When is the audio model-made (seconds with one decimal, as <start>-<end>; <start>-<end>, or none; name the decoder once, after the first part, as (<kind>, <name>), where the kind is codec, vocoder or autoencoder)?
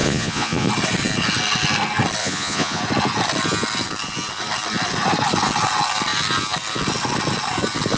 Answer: 0.0-0.7 (vocoder, Vocos); 2.2-2.8